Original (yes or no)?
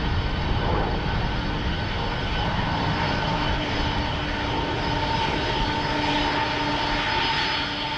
yes